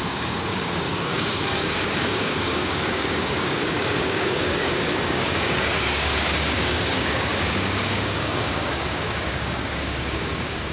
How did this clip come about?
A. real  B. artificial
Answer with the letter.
B